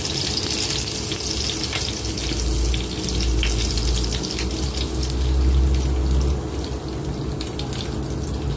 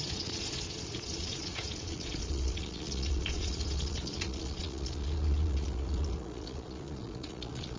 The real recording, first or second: first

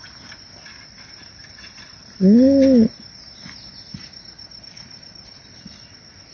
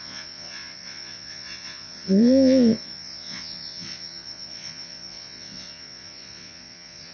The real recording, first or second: first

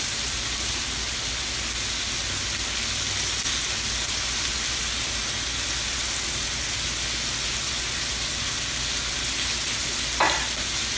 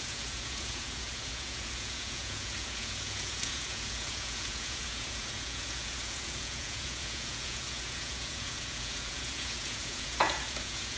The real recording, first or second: first